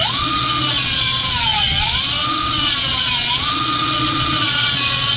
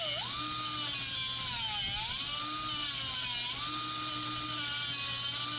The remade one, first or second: first